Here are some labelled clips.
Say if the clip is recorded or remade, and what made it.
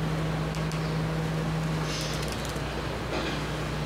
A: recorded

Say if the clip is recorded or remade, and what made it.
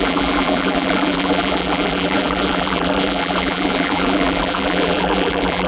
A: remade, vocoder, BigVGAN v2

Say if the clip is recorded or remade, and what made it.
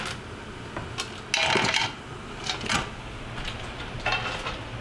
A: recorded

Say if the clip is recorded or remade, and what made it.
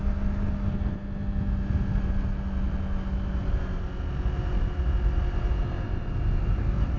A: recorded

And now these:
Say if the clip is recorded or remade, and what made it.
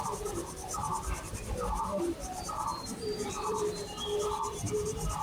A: remade, vocoder, BigVGAN v2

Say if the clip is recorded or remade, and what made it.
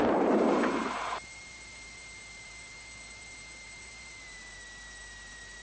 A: remade, vocoder, BigVGAN v2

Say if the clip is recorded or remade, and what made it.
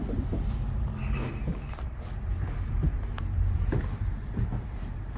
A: remade, vocoder, BigVGAN v2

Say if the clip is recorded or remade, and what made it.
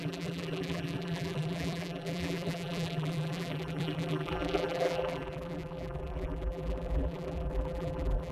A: remade, vocoder, BigVGAN v2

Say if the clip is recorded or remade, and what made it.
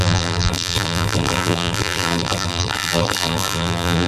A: remade, vocoder, BigVGAN v2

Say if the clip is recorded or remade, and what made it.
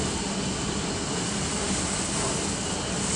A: recorded